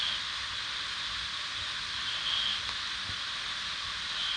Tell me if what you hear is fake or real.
real